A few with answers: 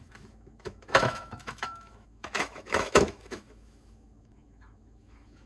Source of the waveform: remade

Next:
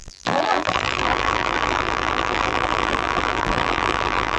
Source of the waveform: remade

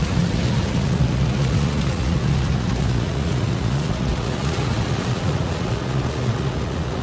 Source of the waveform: remade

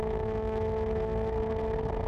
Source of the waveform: remade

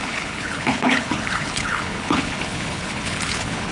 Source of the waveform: remade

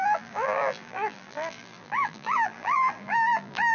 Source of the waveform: remade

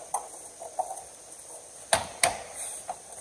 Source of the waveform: recorded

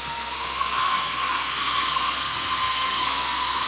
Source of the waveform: remade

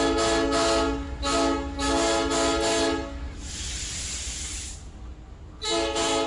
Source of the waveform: recorded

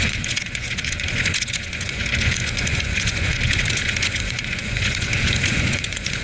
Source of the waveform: remade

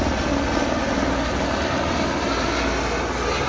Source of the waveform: recorded